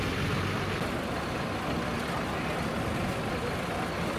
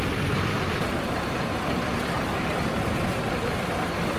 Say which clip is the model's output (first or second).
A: second